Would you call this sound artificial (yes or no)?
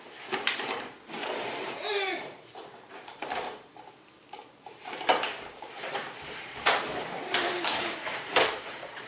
yes